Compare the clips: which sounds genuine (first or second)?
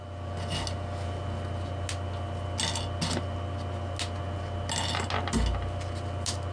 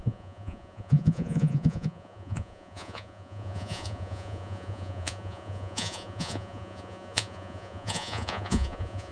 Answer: first